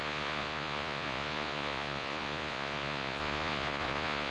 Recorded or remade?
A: remade